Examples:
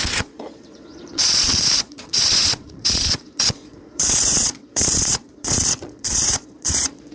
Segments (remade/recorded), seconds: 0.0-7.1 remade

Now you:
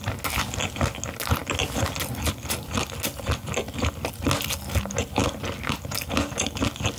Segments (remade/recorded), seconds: 0.0-7.0 recorded

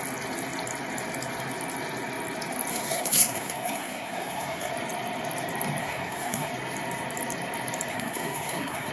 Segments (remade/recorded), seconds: 0.0-2.7 recorded; 2.7-4.7 remade; 4.7-5.8 recorded; 5.8-6.5 remade; 6.5-7.9 recorded; 7.9-8.9 remade

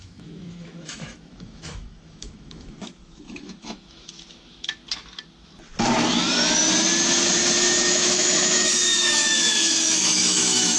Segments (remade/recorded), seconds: 0.0-4.8 remade; 4.8-7.8 recorded; 7.8-10.8 remade

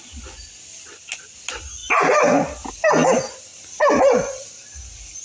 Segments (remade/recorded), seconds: 0.0-5.2 recorded

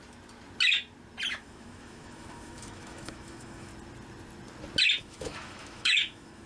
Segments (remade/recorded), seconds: 0.0-1.3 recorded; 1.3-3.7 remade; 3.7-5.0 recorded; 5.0-6.5 remade